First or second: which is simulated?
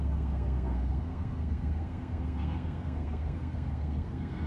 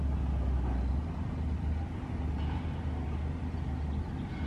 first